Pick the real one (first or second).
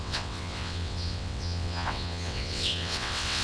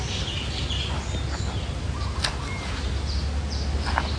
second